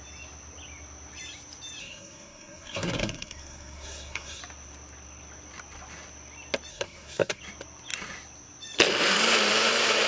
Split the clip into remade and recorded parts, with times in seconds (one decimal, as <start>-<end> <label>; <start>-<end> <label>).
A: 0.0-1.8 recorded; 1.8-4.4 remade; 4.4-6.7 recorded; 6.7-7.4 remade; 7.4-10.1 recorded